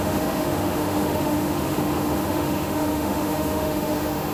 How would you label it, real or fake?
fake